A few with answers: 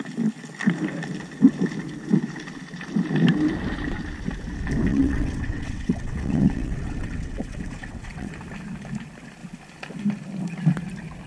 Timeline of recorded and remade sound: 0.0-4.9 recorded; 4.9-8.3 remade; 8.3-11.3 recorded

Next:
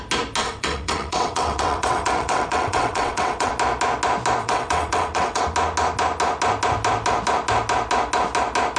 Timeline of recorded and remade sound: 0.0-0.4 recorded; 0.4-3.5 remade; 3.5-4.4 recorded; 4.4-5.4 remade; 5.4-8.8 recorded

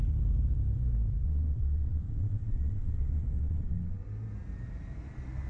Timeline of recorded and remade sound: 0.0-1.2 recorded; 1.2-4.0 remade; 4.0-5.5 recorded

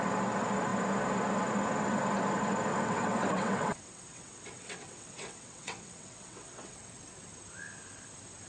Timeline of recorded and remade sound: 0.0-2.7 recorded; 2.7-7.3 remade; 7.3-8.5 recorded

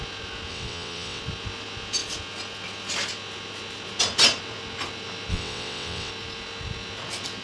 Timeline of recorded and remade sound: 0.0-0.5 recorded; 0.5-1.2 remade; 1.2-5.3 recorded; 5.3-6.1 remade; 6.1-7.4 recorded

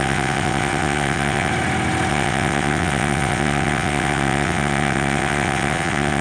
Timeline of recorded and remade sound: 0.0-1.5 remade; 1.5-2.1 recorded; 2.1-6.2 remade

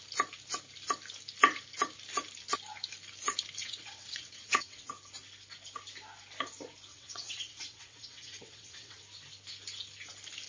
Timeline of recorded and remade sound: 0.0-3.6 recorded; 3.6-4.9 remade; 4.9-6.9 recorded; 6.9-9.0 remade; 9.0-10.5 recorded